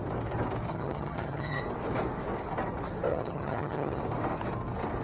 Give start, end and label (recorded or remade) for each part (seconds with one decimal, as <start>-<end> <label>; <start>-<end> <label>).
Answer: 0.0-0.7 recorded; 0.7-1.6 remade; 1.6-3.1 recorded; 3.1-4.0 remade; 4.0-5.0 recorded